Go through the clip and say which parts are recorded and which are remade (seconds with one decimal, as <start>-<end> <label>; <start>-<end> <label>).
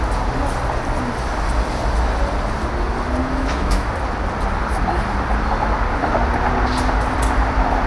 0.0-3.2 recorded; 3.2-3.9 remade; 3.9-7.9 recorded